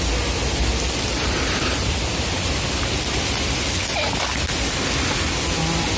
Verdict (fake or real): real